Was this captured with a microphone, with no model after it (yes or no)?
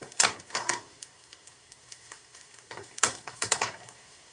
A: no